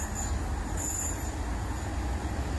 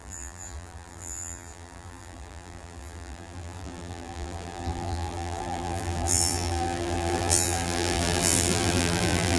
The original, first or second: first